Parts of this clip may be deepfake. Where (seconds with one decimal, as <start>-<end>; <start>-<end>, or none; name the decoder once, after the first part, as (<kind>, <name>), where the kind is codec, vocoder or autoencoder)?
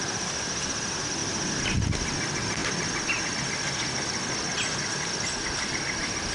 none